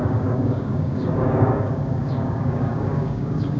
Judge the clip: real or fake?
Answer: fake